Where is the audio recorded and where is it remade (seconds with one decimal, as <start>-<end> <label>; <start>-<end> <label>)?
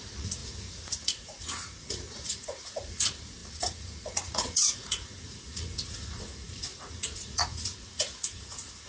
0.0-8.9 remade